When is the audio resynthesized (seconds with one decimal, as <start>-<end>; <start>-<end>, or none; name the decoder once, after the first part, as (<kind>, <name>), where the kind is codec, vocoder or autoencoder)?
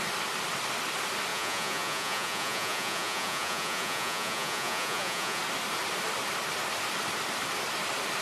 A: 1.3-5.4 (vocoder, Vocos)